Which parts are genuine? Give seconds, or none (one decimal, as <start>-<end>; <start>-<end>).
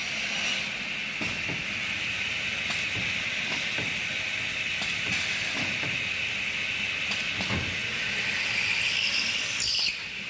0.0-10.3